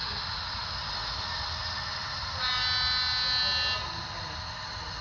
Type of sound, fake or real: real